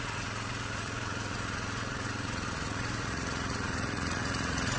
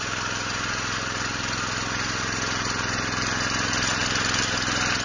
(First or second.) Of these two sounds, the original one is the second